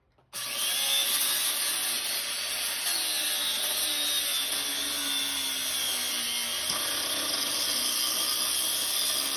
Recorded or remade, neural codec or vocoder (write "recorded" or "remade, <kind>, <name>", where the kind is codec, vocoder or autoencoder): recorded